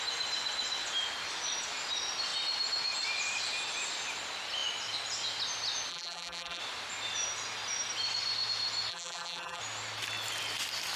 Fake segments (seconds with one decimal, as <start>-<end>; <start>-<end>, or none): 5.9-6.6; 8.9-9.6